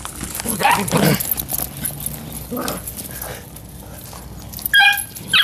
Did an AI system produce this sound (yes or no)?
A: no